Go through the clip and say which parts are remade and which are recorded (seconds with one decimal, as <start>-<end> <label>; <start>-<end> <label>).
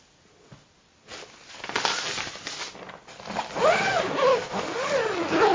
0.0-4.3 recorded; 4.3-4.9 remade; 4.9-5.5 recorded